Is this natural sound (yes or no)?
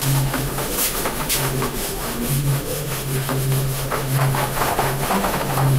no